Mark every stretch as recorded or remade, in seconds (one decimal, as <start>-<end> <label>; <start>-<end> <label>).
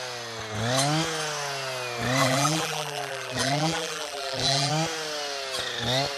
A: 0.0-2.2 recorded; 2.2-4.7 remade; 4.7-6.2 recorded